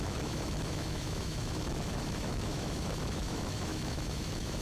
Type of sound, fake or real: fake